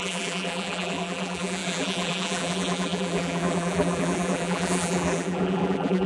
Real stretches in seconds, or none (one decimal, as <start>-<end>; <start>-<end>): none